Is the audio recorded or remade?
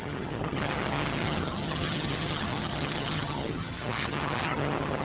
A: remade